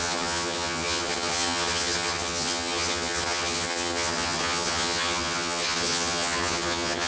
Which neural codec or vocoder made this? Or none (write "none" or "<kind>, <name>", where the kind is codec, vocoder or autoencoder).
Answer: vocoder, HiFi-GAN